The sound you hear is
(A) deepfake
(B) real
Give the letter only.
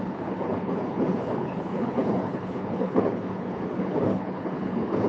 A